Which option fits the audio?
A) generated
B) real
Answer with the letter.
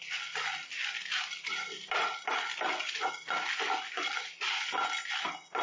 B